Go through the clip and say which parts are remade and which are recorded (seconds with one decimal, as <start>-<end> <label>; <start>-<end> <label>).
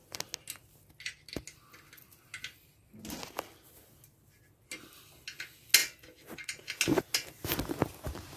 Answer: 0.0-8.4 recorded